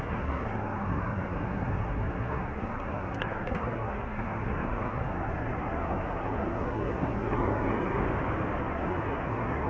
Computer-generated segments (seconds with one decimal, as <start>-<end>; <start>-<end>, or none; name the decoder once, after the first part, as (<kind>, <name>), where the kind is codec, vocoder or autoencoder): 0.0-8.0 (codec, SNAC); 8.6-9.7